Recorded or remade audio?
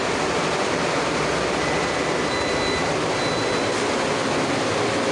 recorded